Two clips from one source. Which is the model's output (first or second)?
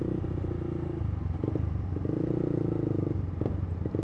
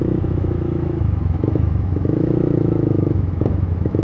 second